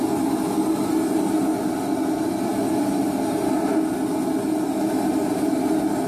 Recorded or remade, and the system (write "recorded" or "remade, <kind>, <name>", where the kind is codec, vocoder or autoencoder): recorded